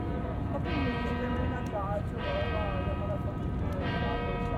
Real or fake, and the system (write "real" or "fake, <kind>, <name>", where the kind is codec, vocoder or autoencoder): fake, vocoder, BigVGAN v2